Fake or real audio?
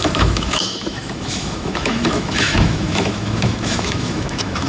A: fake